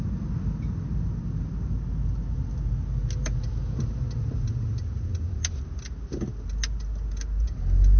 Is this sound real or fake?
real